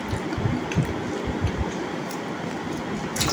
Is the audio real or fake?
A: real